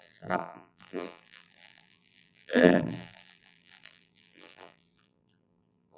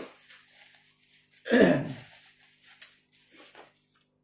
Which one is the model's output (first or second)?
first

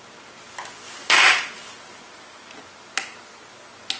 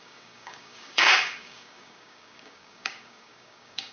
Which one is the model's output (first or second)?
second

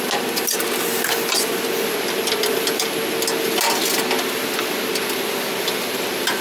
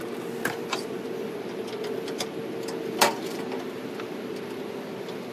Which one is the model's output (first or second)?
second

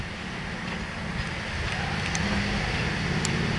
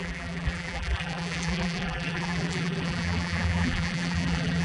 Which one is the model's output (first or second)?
second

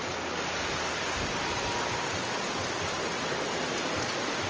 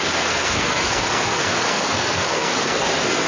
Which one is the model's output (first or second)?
second